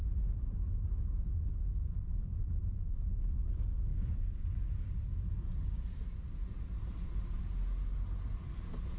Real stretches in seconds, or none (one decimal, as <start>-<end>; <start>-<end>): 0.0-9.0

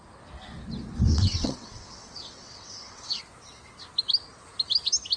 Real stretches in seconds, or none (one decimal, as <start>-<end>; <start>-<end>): 0.0-1.1; 3.2-5.2

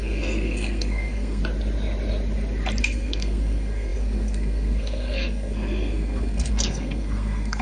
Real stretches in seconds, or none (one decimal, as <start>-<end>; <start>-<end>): 1.4-2.8

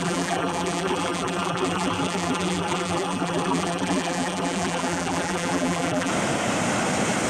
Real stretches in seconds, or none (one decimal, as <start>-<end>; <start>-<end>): 6.1-7.3

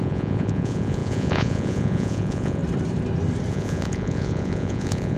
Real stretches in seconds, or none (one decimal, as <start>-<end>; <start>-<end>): 2.6-3.5

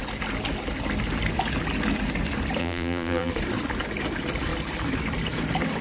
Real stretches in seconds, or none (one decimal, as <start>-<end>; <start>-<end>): 0.0-2.6; 3.3-5.8

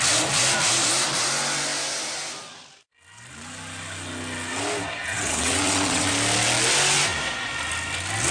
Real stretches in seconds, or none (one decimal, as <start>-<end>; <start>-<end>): 0.0-5.1; 6.1-8.3